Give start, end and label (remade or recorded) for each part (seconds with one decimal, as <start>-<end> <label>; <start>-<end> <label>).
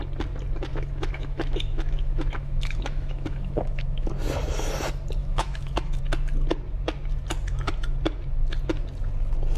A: 0.0-0.7 recorded; 0.7-4.1 remade; 4.1-5.2 recorded; 5.2-6.0 remade; 6.0-9.6 recorded